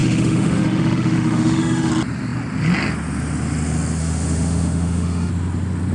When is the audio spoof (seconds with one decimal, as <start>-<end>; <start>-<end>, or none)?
0.0-1.9; 4.0-5.3

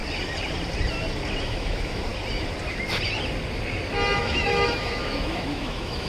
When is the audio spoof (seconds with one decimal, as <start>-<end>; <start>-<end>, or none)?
1.4-2.1; 4.2-6.1

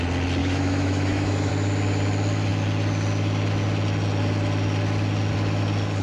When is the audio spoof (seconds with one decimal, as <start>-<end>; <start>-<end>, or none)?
0.4-1.5

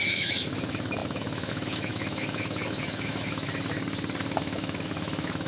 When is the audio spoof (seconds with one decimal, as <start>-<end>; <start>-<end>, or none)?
0.0-3.5; 4.4-5.5